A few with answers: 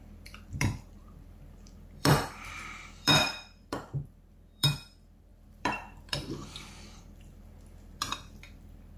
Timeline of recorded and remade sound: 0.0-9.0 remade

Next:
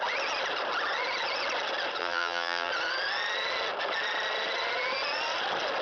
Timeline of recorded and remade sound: 0.0-2.0 recorded; 2.0-2.7 remade; 2.7-5.8 recorded

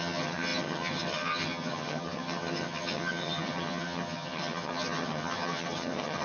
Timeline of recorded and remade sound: 0.0-6.2 remade

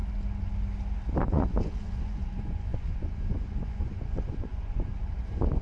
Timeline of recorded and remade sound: 0.0-1.2 recorded; 1.2-5.6 remade

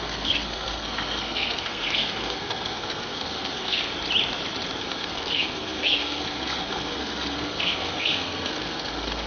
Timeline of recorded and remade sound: 0.0-3.9 remade; 3.9-4.8 recorded; 4.8-9.3 remade